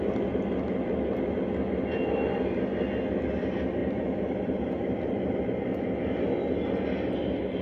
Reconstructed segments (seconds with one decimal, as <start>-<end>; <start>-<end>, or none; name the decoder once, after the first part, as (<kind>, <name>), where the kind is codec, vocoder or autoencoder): 3.8-5.3 (vocoder, BigVGAN v2)